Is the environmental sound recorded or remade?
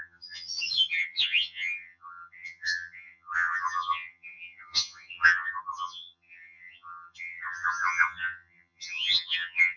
remade